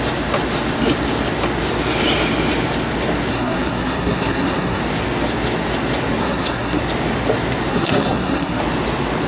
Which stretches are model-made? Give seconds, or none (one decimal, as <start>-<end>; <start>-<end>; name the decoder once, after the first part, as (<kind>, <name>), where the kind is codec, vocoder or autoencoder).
3.3-4.8 (codec, SNAC); 6.2-6.8; 7.7-8.6